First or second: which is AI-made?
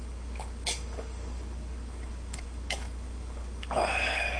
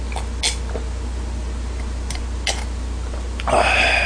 first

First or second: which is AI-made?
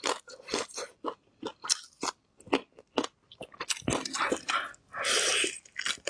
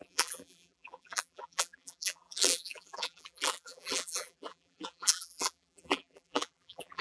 second